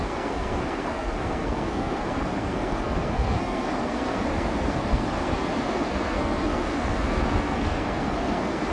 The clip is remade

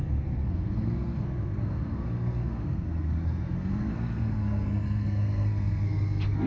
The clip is remade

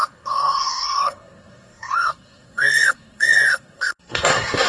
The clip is remade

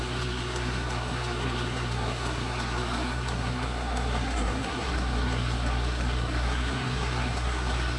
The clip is remade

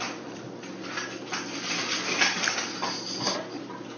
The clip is recorded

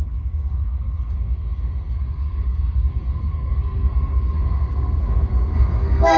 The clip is remade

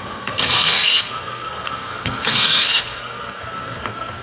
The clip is remade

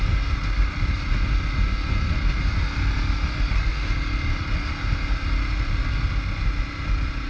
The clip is recorded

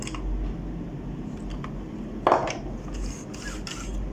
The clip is recorded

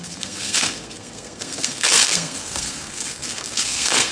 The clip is remade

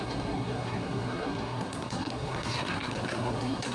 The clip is remade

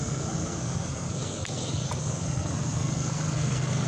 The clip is remade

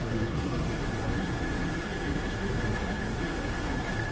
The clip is remade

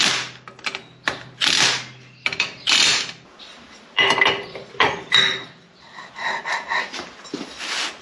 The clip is recorded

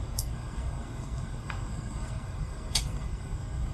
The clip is remade